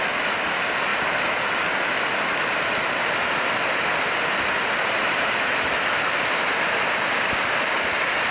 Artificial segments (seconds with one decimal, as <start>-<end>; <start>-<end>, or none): 0.9-3.3

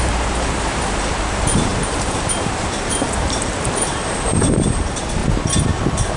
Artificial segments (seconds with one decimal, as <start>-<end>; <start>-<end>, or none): 0.0-5.2; 5.8-6.2

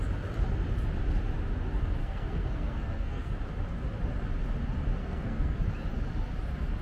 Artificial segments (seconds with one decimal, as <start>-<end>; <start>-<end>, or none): 2.0-3.3; 5.0-5.6

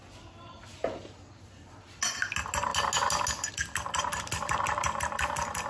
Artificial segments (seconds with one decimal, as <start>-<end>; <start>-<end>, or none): 0.7-2.0

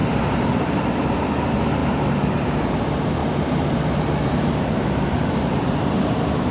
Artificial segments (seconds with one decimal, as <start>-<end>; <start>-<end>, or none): 0.0-1.1; 1.8-2.6; 3.2-6.5

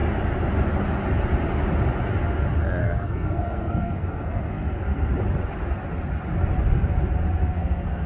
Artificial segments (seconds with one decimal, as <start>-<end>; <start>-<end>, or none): 2.8-5.1; 7.4-8.1

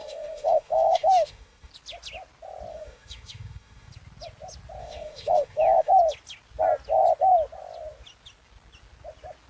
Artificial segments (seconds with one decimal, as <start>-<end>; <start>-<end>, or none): 0.0-1.7; 2.7-3.9; 4.8-5.9

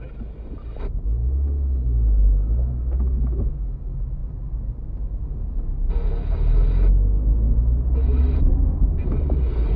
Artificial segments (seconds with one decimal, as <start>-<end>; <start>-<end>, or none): none